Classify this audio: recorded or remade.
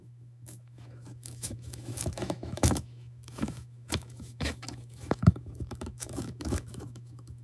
remade